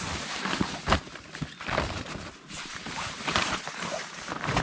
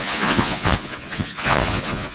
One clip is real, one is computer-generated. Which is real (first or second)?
first